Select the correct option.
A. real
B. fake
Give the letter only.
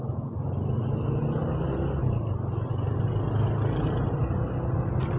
A